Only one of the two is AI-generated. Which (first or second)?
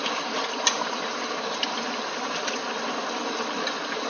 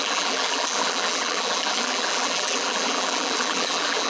second